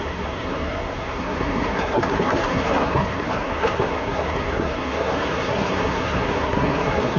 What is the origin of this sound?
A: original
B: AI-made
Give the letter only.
B